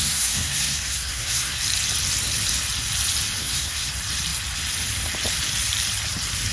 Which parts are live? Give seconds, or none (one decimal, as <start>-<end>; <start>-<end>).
1.6-3.4; 3.9-6.5